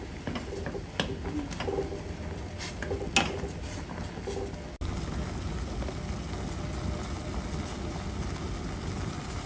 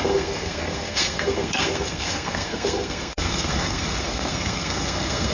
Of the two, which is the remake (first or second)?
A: second